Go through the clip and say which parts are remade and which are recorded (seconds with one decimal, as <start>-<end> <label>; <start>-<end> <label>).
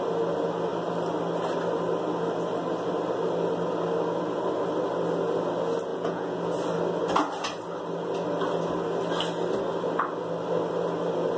0.0-5.9 recorded; 5.9-6.4 remade; 6.4-11.4 recorded